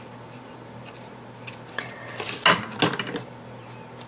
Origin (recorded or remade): recorded